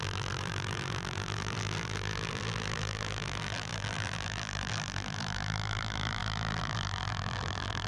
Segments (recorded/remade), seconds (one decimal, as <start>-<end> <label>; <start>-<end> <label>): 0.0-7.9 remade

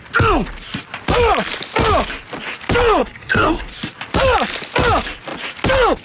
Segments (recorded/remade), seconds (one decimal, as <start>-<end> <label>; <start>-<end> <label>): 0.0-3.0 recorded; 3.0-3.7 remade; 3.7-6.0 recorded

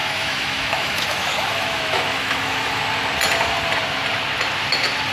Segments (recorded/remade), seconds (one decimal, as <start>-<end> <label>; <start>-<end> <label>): 0.0-2.8 remade; 2.8-5.1 recorded

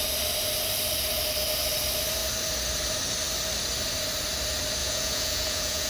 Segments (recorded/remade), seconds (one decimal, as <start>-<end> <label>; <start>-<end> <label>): 0.0-4.8 recorded; 4.8-5.9 remade